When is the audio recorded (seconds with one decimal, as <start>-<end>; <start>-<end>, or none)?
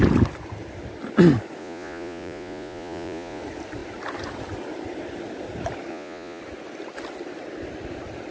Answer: 0.0-1.6; 3.4-5.9; 6.4-8.3